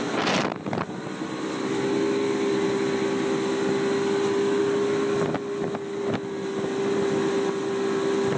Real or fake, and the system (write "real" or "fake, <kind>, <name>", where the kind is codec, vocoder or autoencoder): real